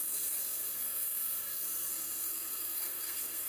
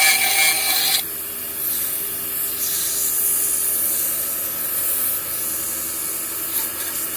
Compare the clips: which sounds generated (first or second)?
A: first